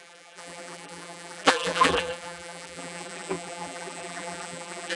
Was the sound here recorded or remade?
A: remade